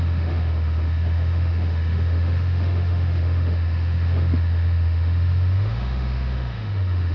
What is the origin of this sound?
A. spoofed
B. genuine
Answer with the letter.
A